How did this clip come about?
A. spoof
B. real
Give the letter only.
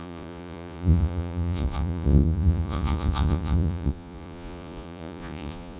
A